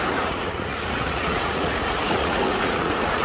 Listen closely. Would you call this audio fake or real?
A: fake